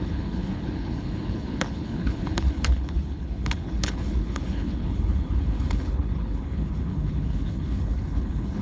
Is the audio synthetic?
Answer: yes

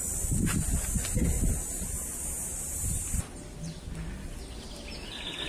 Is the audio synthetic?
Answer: no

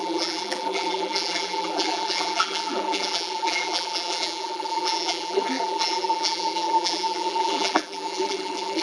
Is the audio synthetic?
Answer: yes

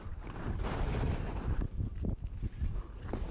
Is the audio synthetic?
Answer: no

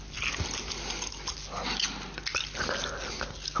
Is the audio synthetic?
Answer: no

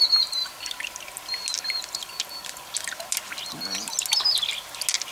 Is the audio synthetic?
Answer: no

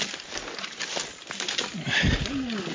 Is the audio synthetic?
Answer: no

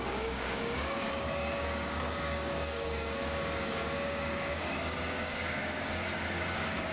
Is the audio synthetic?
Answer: yes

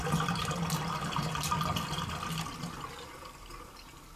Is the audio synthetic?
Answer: no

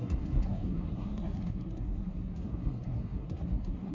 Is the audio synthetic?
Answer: yes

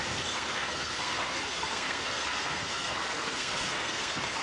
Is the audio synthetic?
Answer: yes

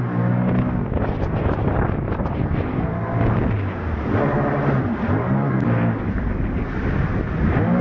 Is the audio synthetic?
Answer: no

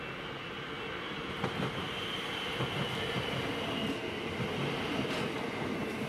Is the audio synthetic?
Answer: no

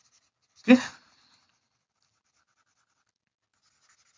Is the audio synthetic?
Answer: no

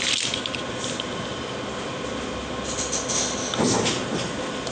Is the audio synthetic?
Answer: no